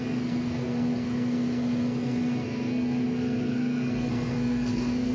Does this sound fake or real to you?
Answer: fake